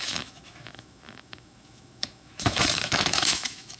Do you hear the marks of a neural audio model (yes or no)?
yes